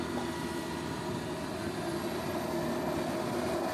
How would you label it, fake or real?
real